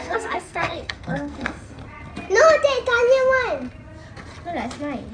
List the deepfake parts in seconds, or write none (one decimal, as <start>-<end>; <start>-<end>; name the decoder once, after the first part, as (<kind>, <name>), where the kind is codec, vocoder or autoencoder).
0.0-1.8 (codec, SNAC)